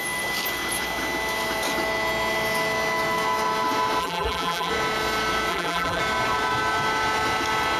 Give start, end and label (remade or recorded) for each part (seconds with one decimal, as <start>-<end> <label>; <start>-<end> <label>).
0.0-4.0 recorded; 4.0-4.7 remade; 4.7-5.5 recorded; 5.5-6.0 remade; 6.0-7.8 recorded